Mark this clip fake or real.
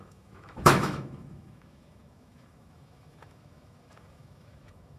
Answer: fake